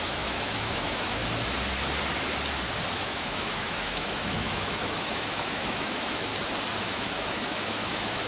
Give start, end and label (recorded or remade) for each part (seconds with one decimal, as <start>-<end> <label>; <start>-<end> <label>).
0.0-1.2 remade; 1.2-2.9 recorded; 2.9-6.3 remade; 6.3-6.8 recorded; 6.8-8.3 remade